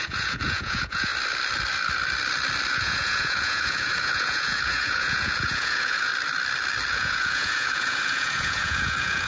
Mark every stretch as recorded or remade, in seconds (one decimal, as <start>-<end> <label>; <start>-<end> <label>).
0.0-1.1 remade; 1.1-2.7 recorded; 2.7-6.1 remade; 6.1-6.9 recorded; 6.9-9.3 remade

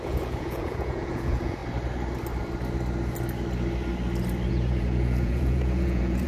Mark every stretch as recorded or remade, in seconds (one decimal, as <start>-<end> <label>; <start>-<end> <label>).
0.0-1.6 remade; 1.6-4.5 recorded; 4.5-6.3 remade